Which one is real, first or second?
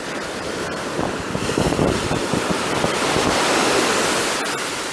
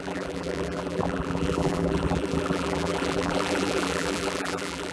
first